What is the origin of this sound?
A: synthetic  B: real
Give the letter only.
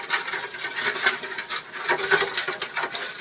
B